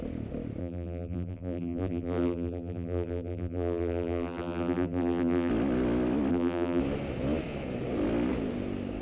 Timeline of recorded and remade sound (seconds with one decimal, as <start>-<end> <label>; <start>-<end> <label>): 0.0-0.6 recorded; 0.6-5.5 remade; 5.5-6.3 recorded; 6.3-6.8 remade; 6.8-9.0 recorded